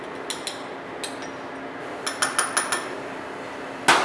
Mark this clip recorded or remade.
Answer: recorded